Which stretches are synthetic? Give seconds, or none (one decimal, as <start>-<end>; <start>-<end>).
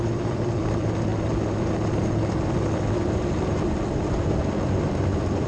0.0-1.1; 4.4-5.5